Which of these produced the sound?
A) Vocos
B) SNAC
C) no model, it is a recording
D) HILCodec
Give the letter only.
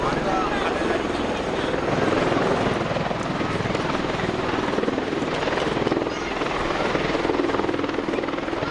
C